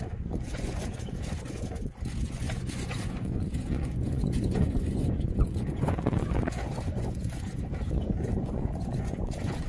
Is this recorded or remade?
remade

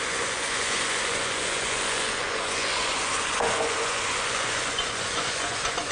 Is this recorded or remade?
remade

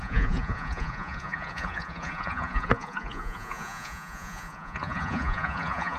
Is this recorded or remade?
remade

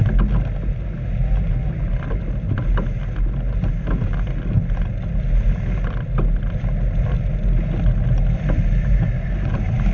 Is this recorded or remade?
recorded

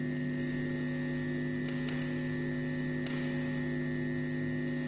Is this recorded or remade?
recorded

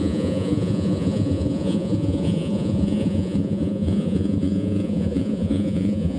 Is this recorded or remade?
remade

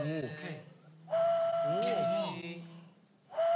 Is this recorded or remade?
recorded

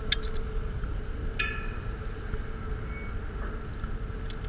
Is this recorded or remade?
recorded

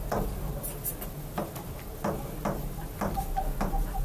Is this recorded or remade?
recorded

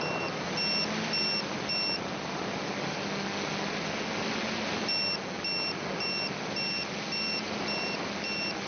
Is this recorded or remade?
recorded